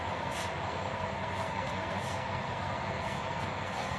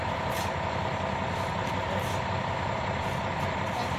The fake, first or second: first